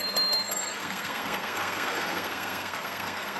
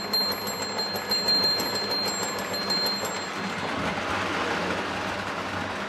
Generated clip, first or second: first